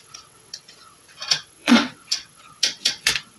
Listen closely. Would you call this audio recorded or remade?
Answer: remade